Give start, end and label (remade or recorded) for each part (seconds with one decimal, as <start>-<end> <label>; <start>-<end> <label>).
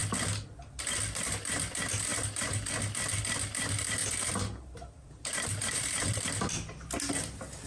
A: 0.0-2.1 recorded; 2.1-2.7 remade; 2.7-4.0 recorded; 4.0-6.3 remade; 6.3-7.7 recorded